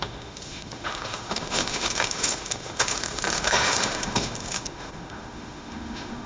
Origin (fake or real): fake